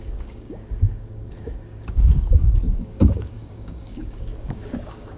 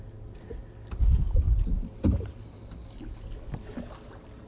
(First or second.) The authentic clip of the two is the second